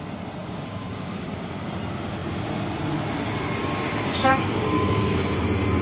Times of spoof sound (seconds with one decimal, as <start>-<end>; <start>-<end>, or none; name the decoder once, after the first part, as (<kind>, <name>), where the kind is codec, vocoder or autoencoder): 0.4-1.7 (codec, DAC); 4.1-5.2